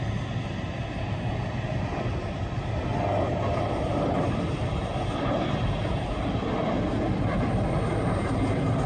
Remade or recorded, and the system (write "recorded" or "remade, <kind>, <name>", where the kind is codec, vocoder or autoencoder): recorded